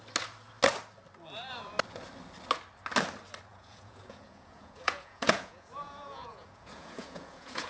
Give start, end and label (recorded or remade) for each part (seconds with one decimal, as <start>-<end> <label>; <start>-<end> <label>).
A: 0.0-3.5 recorded; 3.5-7.7 remade